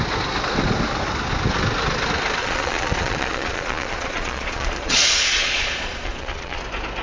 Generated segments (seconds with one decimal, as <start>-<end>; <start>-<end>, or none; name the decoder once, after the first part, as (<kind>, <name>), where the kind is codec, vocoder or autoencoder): 2.4-6.6 (vocoder, Vocos)